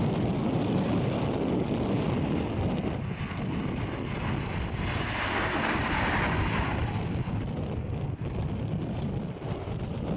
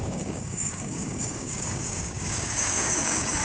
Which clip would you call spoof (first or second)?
second